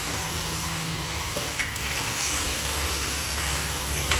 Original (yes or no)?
no